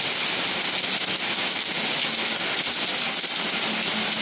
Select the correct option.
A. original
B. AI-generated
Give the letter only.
A